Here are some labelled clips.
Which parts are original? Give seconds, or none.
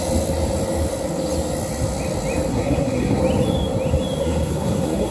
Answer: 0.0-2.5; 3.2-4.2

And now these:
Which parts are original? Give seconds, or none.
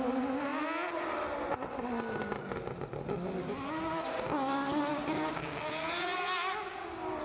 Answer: 0.0-4.9; 5.7-7.2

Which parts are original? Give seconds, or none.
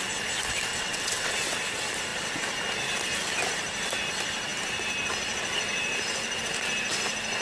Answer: 0.0-0.7; 1.3-7.4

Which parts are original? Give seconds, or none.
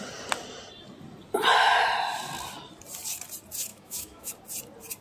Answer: 0.0-3.7; 4.3-5.0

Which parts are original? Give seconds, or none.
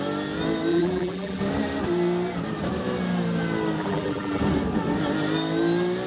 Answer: 0.0-0.7; 1.4-3.8; 4.4-6.1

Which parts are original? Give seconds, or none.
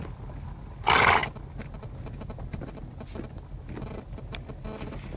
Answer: 0.0-5.2